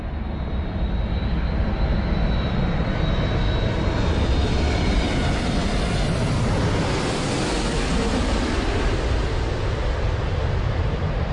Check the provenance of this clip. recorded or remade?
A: recorded